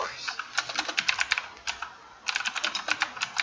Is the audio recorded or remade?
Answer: recorded